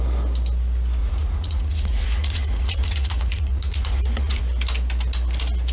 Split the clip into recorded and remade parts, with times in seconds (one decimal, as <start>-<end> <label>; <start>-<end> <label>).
0.0-1.0 recorded; 1.0-4.4 remade; 4.4-5.7 recorded